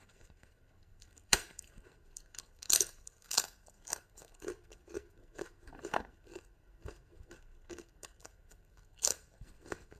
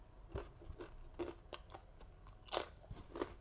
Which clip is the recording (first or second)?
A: second